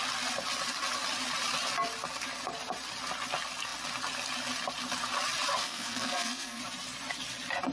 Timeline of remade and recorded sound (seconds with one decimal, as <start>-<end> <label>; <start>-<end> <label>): 0.0-5.6 recorded; 5.6-6.6 remade; 6.6-7.7 recorded